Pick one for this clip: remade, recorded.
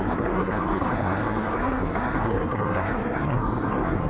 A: remade